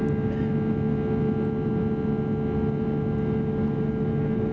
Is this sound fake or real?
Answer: real